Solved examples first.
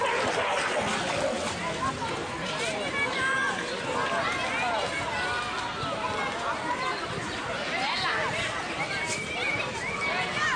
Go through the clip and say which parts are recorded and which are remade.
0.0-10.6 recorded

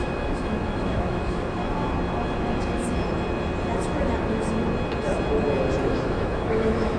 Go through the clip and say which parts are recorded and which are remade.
0.0-1.6 remade; 1.6-5.8 recorded; 5.8-7.0 remade

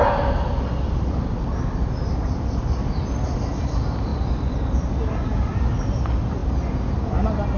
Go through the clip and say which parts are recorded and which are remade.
0.0-7.6 recorded

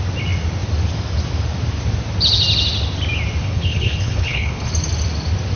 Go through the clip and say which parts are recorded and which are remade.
0.0-3.4 recorded; 3.4-4.7 remade; 4.7-5.6 recorded

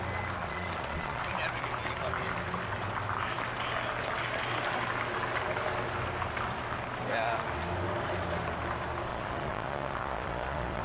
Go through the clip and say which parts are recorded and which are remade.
0.0-0.4 recorded; 0.4-1.2 remade; 1.2-9.1 recorded; 9.1-10.8 remade